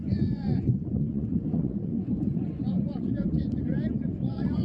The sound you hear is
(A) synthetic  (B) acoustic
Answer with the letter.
A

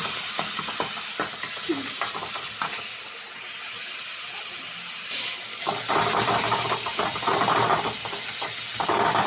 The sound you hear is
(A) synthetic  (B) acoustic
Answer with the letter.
B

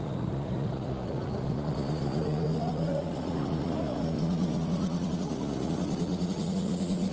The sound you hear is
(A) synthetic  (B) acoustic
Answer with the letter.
A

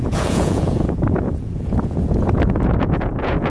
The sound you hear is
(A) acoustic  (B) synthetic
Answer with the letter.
B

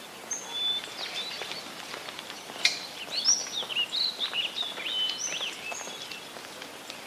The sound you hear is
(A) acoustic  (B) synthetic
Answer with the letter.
A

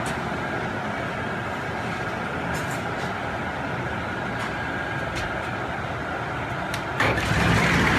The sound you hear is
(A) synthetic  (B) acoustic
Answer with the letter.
B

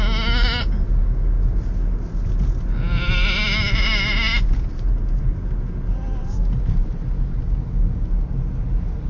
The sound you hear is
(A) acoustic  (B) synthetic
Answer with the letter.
A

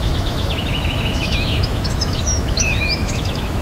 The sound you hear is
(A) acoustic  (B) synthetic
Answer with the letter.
B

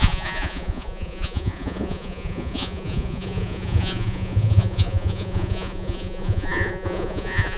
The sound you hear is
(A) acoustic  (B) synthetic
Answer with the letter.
B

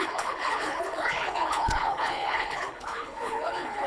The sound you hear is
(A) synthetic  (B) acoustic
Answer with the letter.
A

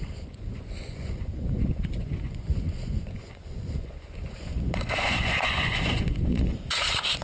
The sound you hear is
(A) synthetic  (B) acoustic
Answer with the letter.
A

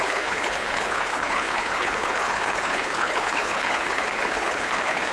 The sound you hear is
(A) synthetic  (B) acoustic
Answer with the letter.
A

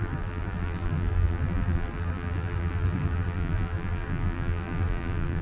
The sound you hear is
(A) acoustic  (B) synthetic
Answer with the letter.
B